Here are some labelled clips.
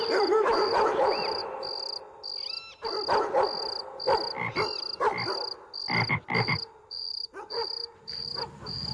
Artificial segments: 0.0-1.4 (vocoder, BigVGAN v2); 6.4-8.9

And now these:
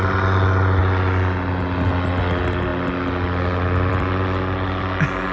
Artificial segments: 0.8-2.2 (vocoder, BigVGAN v2)

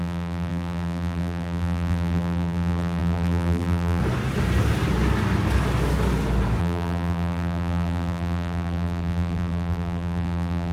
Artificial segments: 0.0-4.0 (vocoder, BigVGAN v2); 6.6-10.7

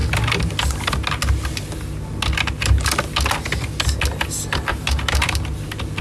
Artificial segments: 4.7-5.4 (vocoder, BigVGAN v2)

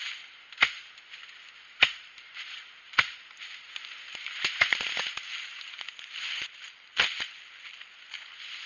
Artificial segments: 1.7-4.9 (vocoder, BigVGAN v2)

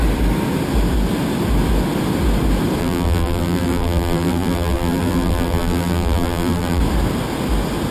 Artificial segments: 2.8-6.8 (vocoder, BigVGAN v2)

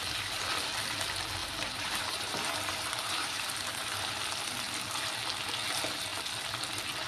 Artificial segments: 1.4-4.2 (vocoder, BigVGAN v2)